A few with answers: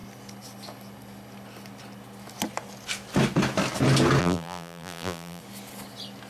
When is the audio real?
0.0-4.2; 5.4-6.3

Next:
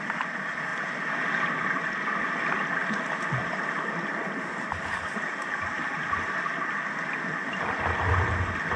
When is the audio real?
0.0-8.8

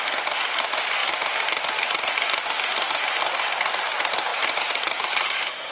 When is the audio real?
0.0-1.0; 2.0-4.3

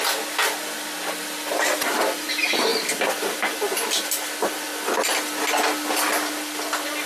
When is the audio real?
0.0-7.1